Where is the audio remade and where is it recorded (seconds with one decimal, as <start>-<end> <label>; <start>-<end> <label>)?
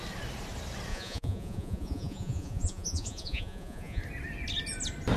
0.0-0.9 recorded; 0.9-4.0 remade; 4.0-5.2 recorded